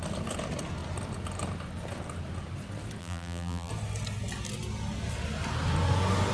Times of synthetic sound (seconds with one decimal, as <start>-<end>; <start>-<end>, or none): 3.0-3.7